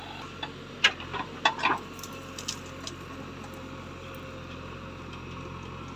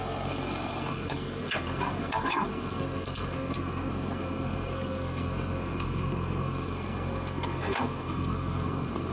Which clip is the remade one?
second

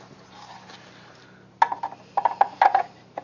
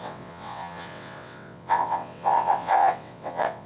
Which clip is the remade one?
second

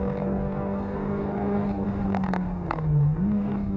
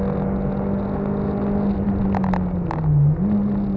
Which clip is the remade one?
first